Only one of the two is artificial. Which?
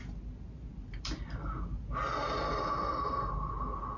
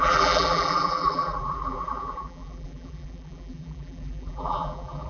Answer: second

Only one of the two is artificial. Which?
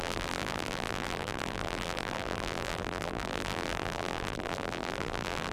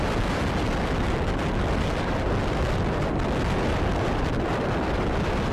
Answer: first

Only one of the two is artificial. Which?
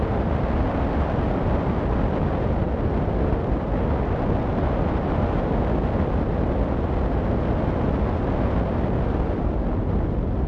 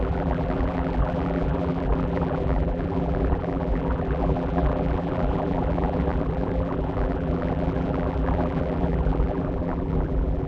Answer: second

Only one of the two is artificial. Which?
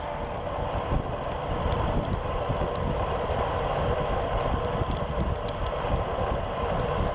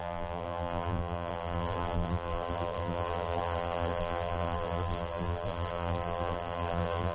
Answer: second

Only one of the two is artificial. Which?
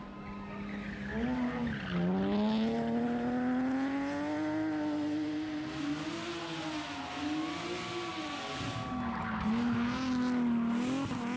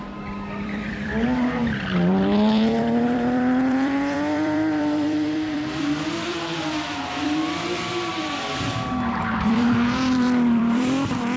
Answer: second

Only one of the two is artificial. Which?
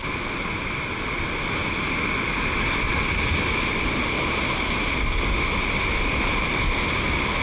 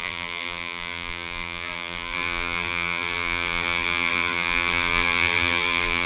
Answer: second